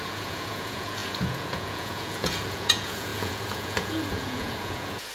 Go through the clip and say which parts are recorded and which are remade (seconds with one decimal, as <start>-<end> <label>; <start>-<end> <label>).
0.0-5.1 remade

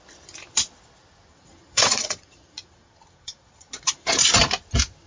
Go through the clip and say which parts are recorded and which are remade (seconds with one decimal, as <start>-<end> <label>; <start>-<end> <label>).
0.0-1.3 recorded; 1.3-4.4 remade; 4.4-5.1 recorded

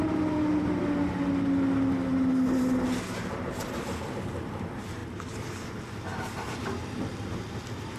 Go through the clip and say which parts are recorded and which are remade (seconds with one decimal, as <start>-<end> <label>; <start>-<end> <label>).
0.0-8.0 recorded

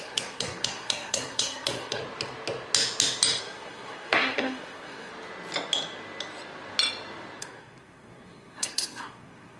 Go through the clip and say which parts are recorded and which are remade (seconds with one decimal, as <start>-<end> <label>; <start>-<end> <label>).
0.0-2.0 remade; 2.0-3.4 recorded; 3.4-5.1 remade; 5.1-7.4 recorded; 7.4-9.6 remade

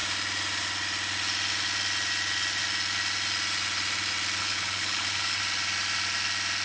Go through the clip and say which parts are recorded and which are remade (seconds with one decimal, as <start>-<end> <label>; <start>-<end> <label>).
0.0-4.4 recorded; 4.4-5.4 remade; 5.4-6.6 recorded

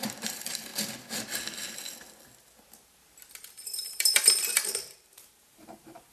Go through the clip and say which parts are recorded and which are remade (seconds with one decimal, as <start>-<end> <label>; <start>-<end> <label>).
0.0-0.7 remade; 0.7-4.2 recorded; 4.2-6.1 remade

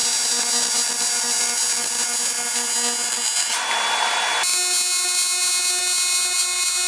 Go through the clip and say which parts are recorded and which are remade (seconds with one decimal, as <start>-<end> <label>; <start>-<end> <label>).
0.0-6.9 recorded